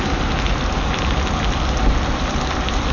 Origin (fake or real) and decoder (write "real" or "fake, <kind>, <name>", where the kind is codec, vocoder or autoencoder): real